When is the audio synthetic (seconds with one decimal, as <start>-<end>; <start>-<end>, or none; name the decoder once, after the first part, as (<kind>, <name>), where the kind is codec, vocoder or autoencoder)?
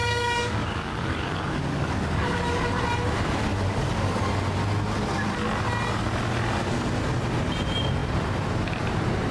0.0-2.8 (codec, DAC); 3.5-4.2